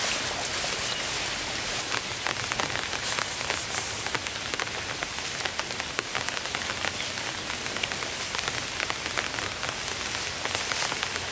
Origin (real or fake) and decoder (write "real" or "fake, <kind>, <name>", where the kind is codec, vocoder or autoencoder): real